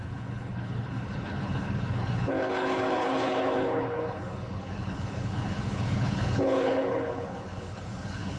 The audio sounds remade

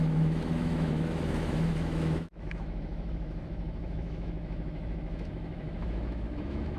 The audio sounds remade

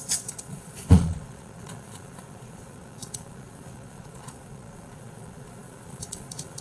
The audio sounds remade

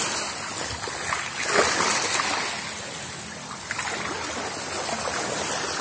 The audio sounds recorded